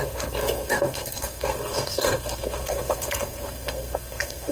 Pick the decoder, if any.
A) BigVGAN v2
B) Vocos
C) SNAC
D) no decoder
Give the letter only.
C